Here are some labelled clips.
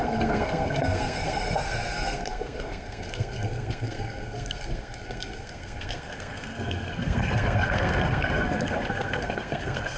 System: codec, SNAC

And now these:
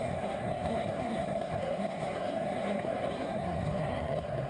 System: codec, SNAC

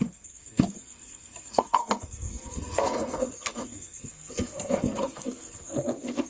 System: codec, SNAC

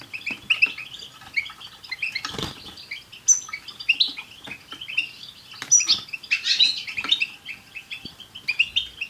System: none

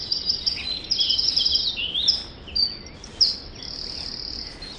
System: none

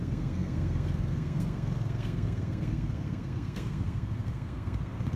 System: codec, SNAC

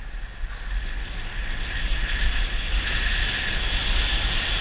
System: none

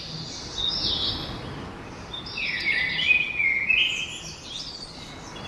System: none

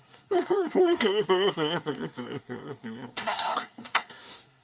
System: codec, SNAC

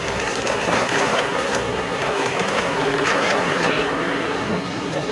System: codec, SNAC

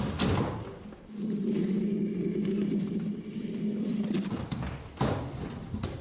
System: none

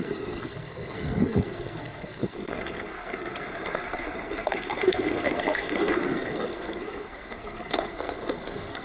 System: codec, SNAC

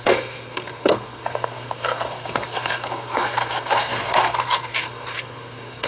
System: codec, SNAC